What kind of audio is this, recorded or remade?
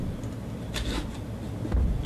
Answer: recorded